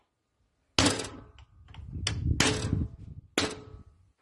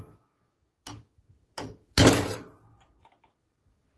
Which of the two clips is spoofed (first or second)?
second